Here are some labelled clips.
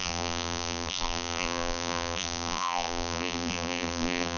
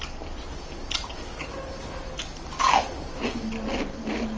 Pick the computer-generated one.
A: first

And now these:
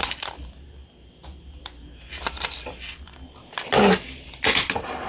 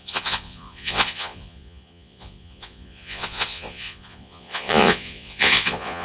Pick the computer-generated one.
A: second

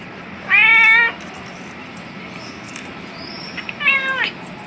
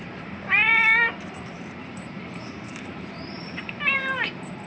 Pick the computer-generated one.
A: second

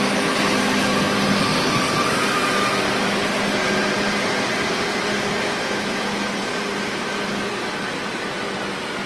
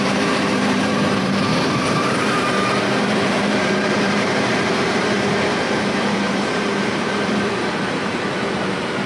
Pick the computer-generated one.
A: second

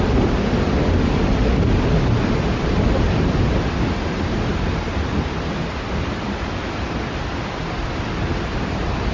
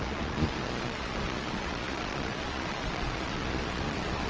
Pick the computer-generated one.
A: second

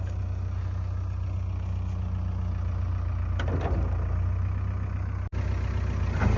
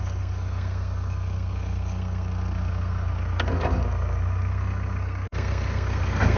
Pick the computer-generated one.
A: second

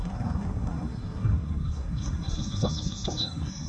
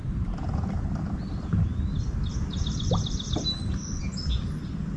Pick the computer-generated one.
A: first